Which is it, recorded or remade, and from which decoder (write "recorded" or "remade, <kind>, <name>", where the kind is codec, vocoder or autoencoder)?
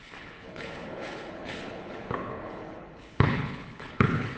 remade, codec, HILCodec